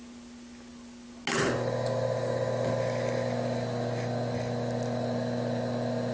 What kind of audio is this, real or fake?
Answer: real